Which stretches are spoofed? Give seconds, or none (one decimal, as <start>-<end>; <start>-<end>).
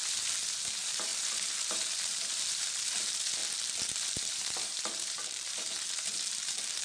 0.6-3.4; 4.2-6.8